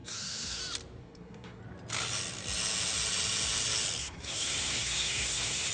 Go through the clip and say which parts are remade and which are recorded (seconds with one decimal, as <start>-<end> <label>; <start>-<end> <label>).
0.0-0.6 remade; 0.6-1.0 recorded; 1.0-1.6 remade; 1.6-4.0 recorded; 4.0-5.7 remade